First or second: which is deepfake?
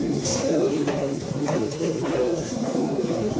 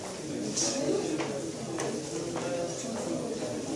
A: first